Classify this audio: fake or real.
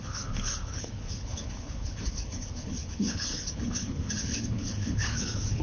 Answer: fake